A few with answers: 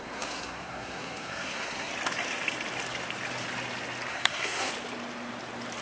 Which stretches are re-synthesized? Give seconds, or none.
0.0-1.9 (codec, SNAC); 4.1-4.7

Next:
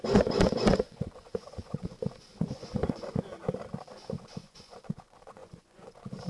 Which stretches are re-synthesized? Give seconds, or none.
0.0-3.3 (vocoder, Vocos); 3.9-6.3

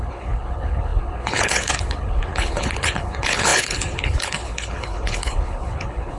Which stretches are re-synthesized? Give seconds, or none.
0.0-6.2 (codec, HILCodec)

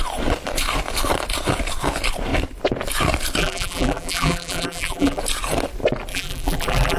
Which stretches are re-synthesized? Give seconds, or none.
3.4-5.2 (vocoder, BigVGAN v2); 6.1-7.0

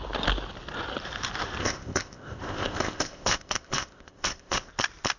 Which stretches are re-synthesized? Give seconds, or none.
1.6-4.7 (codec, ZipCodec)

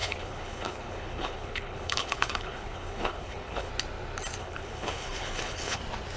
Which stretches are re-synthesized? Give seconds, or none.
0.0-3.7 (codec, HILCodec); 4.4-5.8

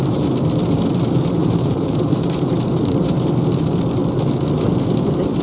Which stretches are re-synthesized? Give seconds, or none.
1.4-3.3 (vocoder, BigVGAN v2)

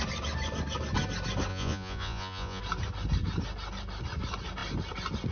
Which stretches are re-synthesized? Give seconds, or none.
1.5-2.6 (vocoder, Vocos)